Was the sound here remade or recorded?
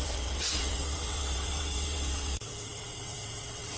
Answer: remade